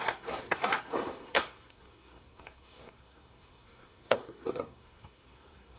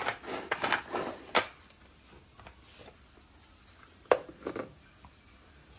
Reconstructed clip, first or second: first